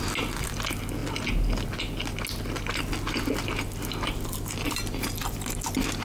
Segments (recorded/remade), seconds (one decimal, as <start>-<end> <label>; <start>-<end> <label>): 0.0-6.0 recorded